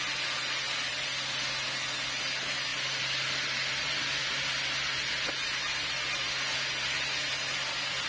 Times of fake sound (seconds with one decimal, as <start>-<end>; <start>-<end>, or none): none